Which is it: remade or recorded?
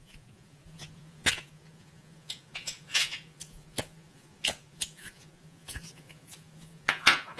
remade